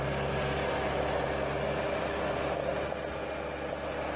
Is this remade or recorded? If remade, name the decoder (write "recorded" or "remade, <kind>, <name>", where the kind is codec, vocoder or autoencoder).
recorded